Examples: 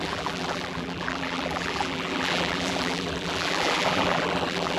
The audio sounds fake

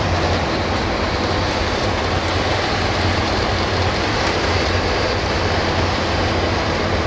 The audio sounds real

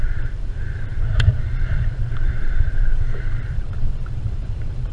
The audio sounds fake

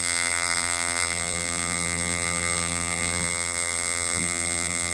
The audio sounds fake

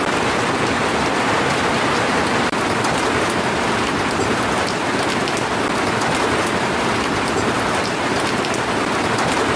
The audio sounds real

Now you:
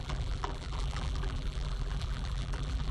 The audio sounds fake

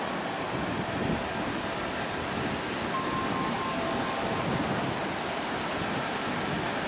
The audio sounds real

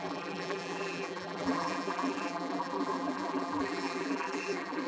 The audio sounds fake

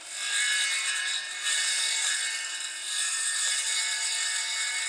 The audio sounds fake